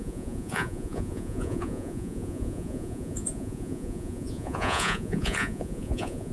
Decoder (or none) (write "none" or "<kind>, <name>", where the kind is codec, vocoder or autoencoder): vocoder, Vocos